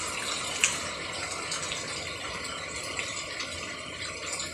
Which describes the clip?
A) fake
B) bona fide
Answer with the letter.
B